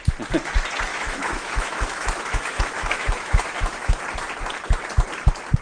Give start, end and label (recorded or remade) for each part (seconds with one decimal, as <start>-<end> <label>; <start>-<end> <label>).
0.0-0.9 recorded; 0.9-4.0 remade; 4.0-5.6 recorded